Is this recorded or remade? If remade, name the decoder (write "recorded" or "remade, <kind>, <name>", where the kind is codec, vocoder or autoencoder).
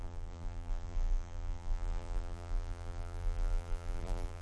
remade, vocoder, BigVGAN v2